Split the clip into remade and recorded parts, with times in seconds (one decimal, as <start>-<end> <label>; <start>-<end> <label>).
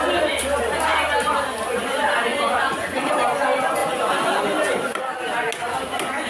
0.0-2.3 recorded; 2.3-3.1 remade; 3.1-3.8 recorded; 3.8-4.4 remade; 4.4-6.3 recorded